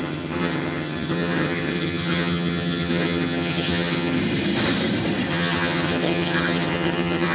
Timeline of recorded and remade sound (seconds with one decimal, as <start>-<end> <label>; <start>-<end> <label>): 0.0-4.2 remade; 4.2-5.3 recorded; 5.3-7.3 remade